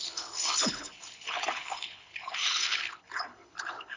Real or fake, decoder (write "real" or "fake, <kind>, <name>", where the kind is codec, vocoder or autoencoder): fake, codec, HILCodec